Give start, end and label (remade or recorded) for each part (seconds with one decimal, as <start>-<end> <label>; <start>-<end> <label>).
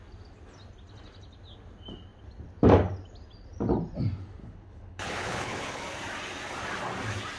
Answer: 0.0-4.4 recorded; 4.4-5.8 remade; 5.8-7.4 recorded